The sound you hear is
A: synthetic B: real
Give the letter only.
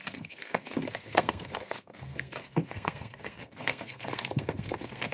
A